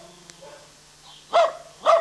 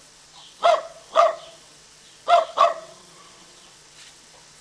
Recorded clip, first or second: first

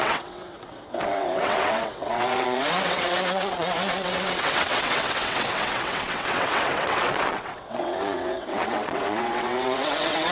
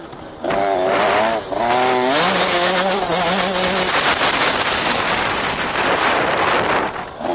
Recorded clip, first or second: second